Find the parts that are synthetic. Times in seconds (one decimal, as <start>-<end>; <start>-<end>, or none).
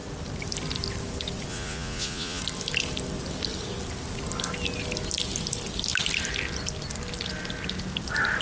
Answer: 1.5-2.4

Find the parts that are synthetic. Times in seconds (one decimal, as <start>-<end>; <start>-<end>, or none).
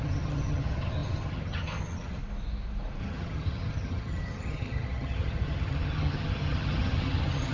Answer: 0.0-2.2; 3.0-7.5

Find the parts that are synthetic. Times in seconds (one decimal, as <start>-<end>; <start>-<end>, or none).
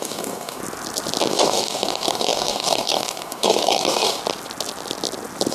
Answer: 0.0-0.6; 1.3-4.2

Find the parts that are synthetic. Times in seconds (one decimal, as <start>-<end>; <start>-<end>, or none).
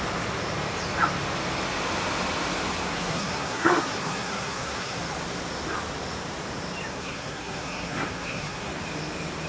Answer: 2.8-5.0; 6.9-8.7